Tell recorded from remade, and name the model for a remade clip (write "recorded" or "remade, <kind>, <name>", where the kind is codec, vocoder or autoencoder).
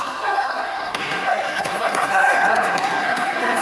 remade, codec, SNAC